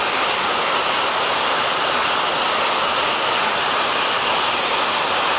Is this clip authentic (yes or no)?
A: yes